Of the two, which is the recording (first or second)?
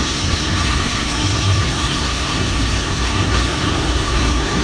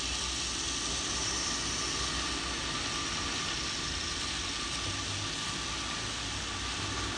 second